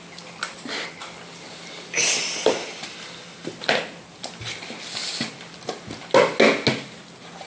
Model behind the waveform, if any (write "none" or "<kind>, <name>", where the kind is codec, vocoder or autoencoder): none